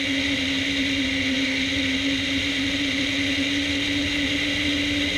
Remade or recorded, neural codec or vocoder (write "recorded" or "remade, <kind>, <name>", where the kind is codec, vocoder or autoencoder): recorded